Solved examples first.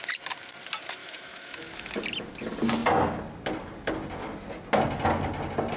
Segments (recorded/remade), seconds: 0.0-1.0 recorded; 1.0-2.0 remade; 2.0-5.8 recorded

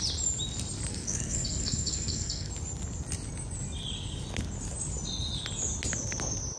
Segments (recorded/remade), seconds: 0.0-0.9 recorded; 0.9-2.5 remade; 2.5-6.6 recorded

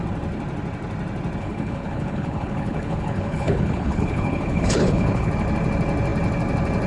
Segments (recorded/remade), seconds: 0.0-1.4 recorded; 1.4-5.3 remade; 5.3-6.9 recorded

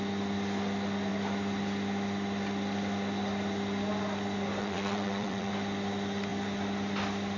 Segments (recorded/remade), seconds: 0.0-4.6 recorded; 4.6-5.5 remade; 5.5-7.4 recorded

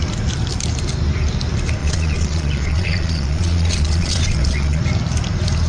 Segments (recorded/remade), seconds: 0.0-1.8 recorded; 1.8-4.8 remade; 4.8-5.7 recorded

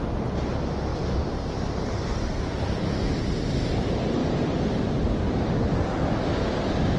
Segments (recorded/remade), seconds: 0.0-7.0 recorded

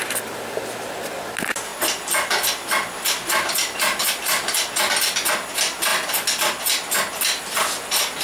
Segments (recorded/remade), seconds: 0.0-8.2 recorded